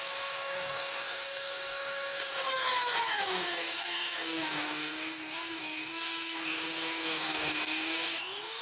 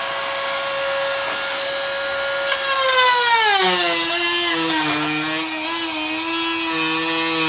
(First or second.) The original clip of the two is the second